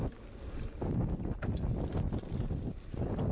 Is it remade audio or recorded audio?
recorded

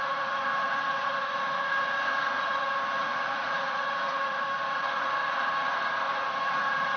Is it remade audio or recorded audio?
remade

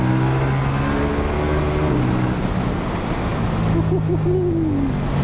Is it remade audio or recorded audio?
recorded